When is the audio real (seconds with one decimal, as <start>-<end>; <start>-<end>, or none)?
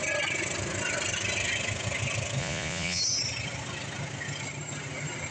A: 0.0-2.4; 3.0-5.3